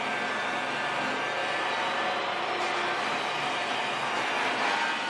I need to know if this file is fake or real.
real